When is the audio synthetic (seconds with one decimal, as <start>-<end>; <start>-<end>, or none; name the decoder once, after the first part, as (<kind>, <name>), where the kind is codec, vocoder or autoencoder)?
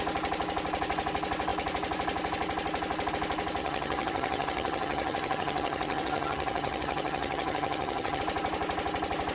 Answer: 3.6-8.2 (vocoder, HiFi-GAN)